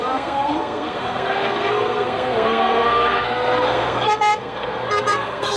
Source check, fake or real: fake